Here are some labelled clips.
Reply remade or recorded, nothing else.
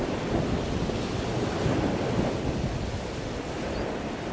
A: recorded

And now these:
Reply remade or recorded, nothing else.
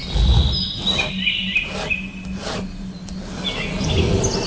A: recorded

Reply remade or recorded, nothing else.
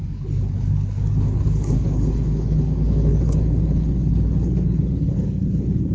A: remade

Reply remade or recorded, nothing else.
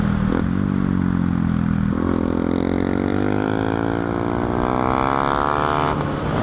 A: recorded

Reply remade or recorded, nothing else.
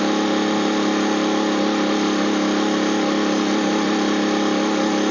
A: recorded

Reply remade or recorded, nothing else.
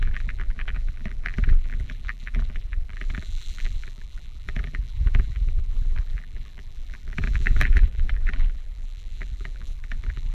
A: remade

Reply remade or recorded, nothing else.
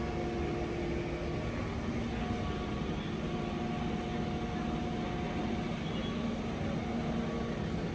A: recorded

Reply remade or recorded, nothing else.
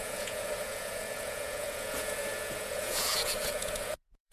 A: remade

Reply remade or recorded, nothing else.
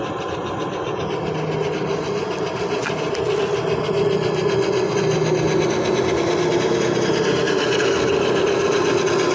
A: recorded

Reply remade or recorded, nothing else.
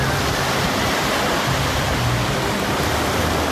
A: recorded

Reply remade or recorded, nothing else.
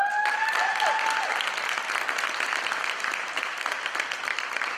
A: recorded